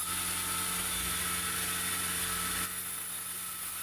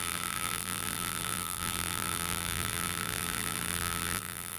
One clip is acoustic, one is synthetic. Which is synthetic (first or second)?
second